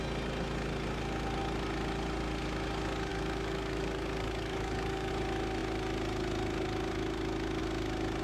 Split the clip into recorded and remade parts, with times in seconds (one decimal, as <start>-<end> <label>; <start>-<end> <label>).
0.0-3.1 recorded; 3.1-5.1 remade; 5.1-8.2 recorded